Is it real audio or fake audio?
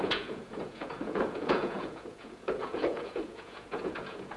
fake